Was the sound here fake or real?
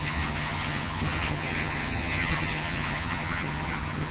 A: fake